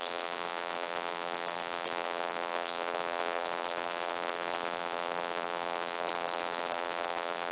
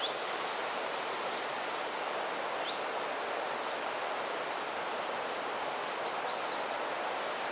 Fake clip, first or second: first